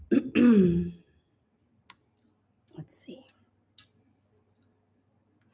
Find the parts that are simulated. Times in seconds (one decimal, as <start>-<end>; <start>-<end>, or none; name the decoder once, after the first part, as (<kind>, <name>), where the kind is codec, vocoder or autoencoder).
0.8-1.3 (codec, DAC)